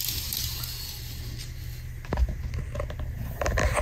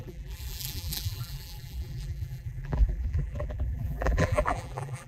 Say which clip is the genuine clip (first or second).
first